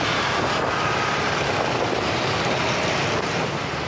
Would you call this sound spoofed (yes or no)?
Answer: no